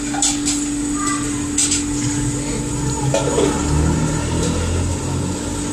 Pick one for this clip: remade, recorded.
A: recorded